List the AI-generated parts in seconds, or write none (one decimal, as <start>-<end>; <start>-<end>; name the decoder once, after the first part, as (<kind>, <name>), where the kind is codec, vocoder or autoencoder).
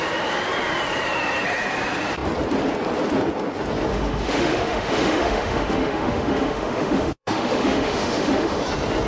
3.9-8.6 (autoencoder, DAC-VAE)